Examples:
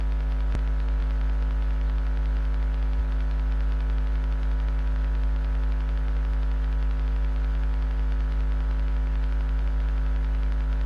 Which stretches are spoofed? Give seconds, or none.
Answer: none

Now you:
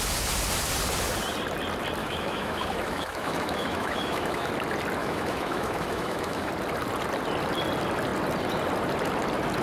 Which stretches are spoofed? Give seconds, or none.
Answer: 2.0-4.5; 5.0-6.5

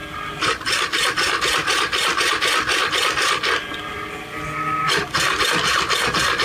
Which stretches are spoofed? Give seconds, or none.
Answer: none